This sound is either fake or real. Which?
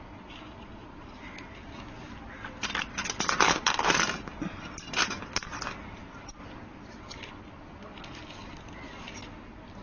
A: real